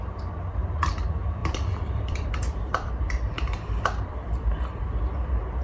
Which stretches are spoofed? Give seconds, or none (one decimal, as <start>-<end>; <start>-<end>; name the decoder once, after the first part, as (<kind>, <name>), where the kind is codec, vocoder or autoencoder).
1.4-4.8 (vocoder, BigVGAN v2)

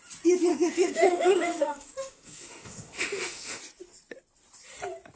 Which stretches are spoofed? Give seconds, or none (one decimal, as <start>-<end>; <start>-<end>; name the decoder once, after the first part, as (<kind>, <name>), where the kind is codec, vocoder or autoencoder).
0.5-3.6 (autoencoder, DAC-VAE)